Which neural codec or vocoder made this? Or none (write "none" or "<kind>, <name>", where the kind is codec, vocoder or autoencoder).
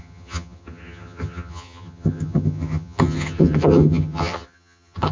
vocoder, HiFi-GAN